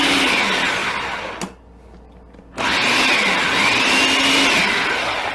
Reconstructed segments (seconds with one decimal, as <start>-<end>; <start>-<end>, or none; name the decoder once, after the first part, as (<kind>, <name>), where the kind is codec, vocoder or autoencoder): none